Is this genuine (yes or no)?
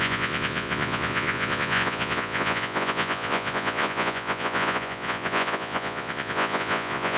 no